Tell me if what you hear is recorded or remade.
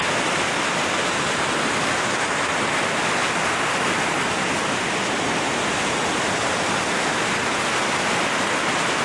recorded